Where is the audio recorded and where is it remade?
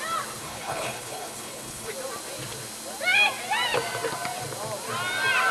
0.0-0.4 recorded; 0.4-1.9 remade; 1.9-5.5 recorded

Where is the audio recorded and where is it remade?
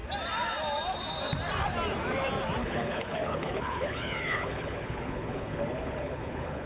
0.0-2.6 recorded; 2.6-6.7 remade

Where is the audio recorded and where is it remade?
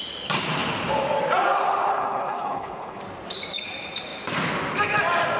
0.0-1.9 recorded; 1.9-3.0 remade; 3.0-5.4 recorded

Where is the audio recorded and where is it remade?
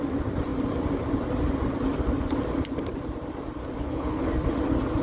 0.0-3.6 recorded; 3.6-4.3 remade; 4.3-5.0 recorded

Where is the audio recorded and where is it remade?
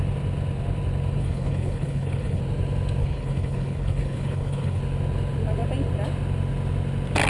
0.0-1.2 recorded; 1.2-2.4 remade; 2.4-3.0 recorded; 3.0-4.8 remade; 4.8-7.3 recorded